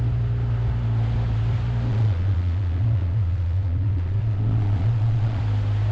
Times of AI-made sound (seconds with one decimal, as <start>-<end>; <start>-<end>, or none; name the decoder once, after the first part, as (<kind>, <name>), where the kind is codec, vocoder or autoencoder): 1.9-5.4 (vocoder, Vocos)